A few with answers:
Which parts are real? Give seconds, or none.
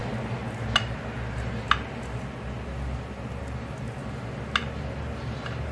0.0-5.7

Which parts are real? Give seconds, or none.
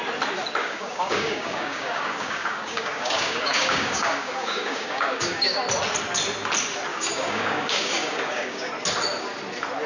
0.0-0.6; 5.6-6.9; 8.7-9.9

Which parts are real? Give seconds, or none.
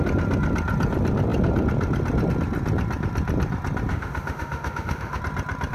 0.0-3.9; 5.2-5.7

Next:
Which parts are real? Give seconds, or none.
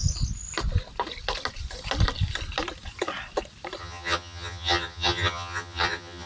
0.0-3.8